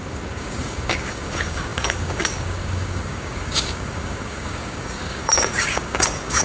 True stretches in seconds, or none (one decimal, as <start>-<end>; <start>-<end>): none